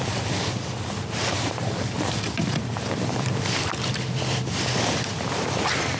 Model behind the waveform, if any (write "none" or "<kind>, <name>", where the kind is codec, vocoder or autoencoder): vocoder, BigVGAN v2